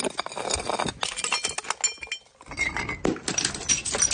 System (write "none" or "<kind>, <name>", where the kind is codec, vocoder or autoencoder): none